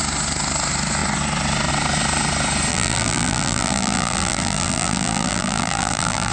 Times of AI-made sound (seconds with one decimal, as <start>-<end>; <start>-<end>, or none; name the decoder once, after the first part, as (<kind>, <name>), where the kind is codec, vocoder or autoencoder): 2.7-6.3 (vocoder, BigVGAN v2)